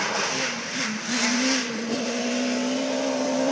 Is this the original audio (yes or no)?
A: no